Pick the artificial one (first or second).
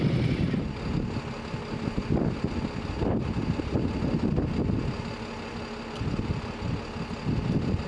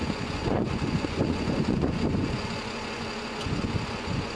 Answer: second